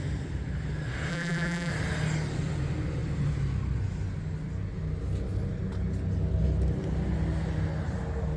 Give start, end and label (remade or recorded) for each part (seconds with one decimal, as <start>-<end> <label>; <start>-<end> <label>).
0.0-1.1 recorded; 1.1-1.7 remade; 1.7-8.4 recorded